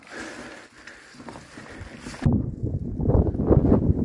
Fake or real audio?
real